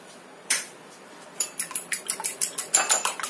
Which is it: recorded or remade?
remade